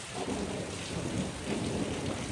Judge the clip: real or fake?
real